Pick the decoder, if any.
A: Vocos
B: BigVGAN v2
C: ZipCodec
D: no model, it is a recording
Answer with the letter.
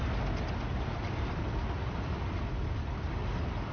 D